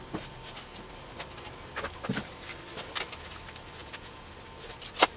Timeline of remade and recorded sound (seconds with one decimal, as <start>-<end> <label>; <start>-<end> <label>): 0.0-3.8 recorded; 3.8-4.3 remade; 4.3-5.2 recorded

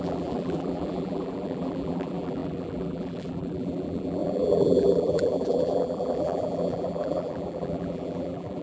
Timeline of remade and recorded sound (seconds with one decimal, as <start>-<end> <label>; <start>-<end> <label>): 0.0-8.6 remade

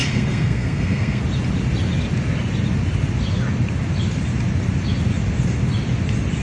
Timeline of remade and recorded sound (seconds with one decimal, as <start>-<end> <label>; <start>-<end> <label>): 0.0-1.2 remade; 1.2-6.4 recorded

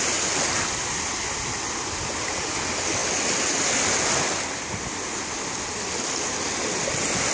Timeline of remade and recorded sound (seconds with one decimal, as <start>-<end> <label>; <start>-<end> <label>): 0.0-7.3 recorded

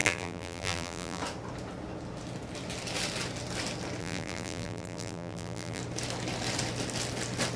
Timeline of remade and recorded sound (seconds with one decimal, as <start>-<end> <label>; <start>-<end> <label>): 0.0-1.2 remade; 1.2-4.0 recorded; 4.0-5.8 remade; 5.8-7.6 recorded

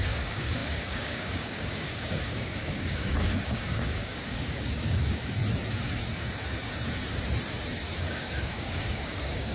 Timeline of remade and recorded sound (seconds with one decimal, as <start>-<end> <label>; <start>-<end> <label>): 0.0-5.4 remade; 5.4-8.0 recorded; 8.0-9.5 remade

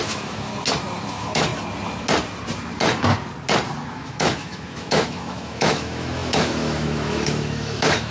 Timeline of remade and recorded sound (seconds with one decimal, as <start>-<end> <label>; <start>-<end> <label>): 0.0-0.5 remade; 0.5-1.1 recorded; 1.1-1.5 remade; 1.5-3.9 recorded; 3.9-8.1 remade

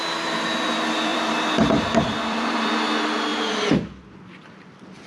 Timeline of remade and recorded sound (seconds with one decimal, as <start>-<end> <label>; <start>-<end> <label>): 0.0-1.1 recorded; 1.1-2.7 remade; 2.7-5.1 recorded